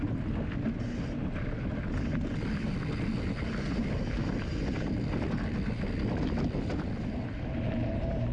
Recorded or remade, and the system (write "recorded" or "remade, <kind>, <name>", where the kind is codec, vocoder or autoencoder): recorded